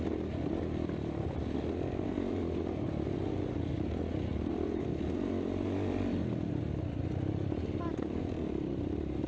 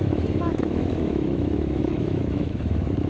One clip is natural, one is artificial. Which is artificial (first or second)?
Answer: second